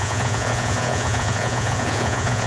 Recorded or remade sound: remade